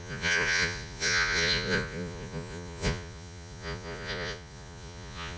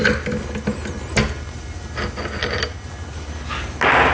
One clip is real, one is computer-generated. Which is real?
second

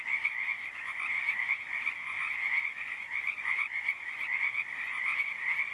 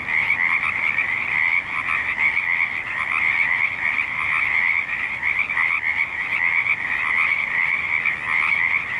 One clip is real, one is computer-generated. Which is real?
second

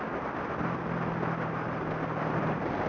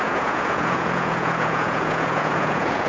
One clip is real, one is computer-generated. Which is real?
first